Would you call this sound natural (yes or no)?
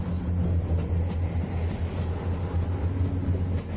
yes